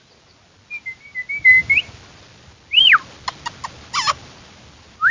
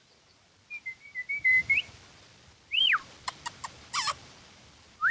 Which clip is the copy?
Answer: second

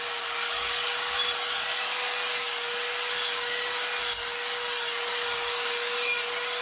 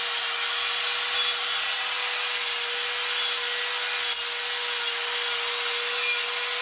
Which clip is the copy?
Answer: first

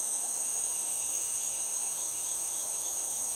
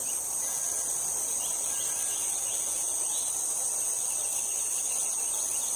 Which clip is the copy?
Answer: first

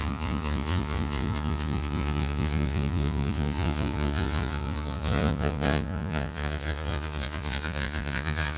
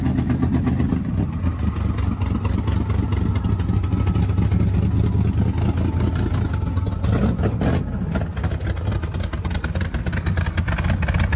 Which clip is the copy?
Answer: first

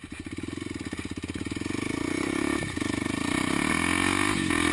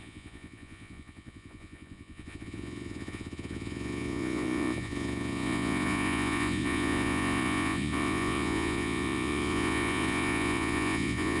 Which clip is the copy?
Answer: second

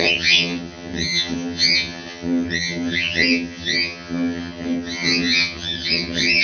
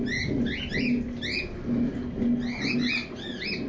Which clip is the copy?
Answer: first